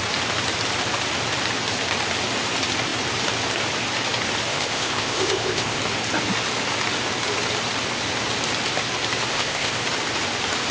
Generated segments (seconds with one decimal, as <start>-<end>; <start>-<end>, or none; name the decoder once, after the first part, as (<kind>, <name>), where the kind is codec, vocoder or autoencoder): 4.5-5.8 (codec, ZipCodec); 9.3-9.8